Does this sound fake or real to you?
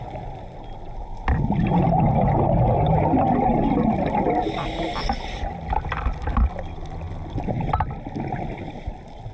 real